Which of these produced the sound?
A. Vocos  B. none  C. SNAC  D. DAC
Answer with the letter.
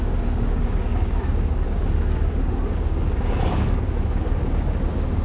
D